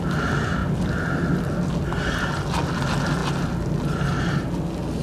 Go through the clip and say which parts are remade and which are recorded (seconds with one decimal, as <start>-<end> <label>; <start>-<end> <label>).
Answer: 0.0-5.0 recorded